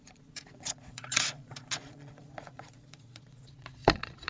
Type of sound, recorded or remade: remade